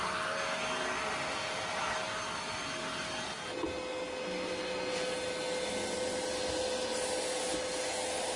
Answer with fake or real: real